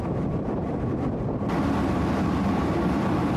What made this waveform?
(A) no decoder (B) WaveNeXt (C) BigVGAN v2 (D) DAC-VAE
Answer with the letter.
A